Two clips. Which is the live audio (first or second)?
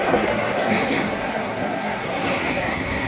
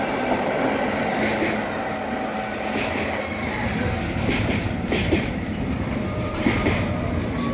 second